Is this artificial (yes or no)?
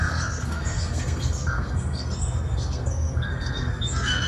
yes